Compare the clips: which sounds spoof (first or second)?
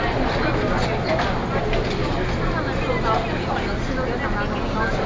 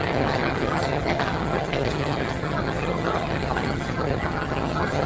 second